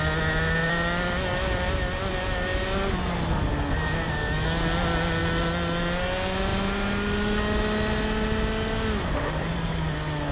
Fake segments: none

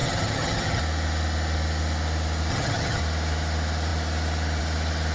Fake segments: 0.0-0.8; 2.5-3.0

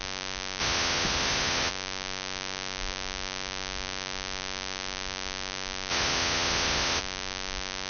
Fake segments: 0.6-1.7; 5.9-7.0

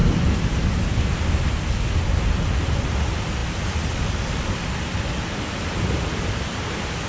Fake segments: none

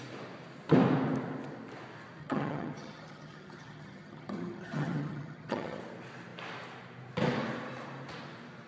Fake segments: 2.2-5.8